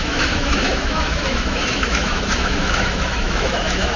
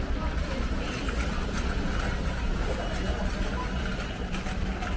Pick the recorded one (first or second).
second